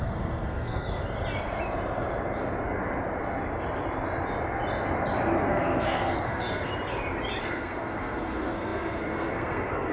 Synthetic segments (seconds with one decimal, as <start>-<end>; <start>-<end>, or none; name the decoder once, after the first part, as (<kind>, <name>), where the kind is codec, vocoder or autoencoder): 0.0-1.0 (codec, SNAC); 5.4-6.7; 7.4-9.9